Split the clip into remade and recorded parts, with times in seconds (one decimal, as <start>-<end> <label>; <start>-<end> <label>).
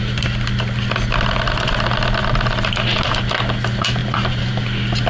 0.0-4.0 recorded; 4.0-4.5 remade; 4.5-5.1 recorded